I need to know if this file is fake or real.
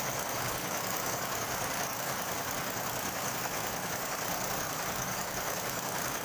fake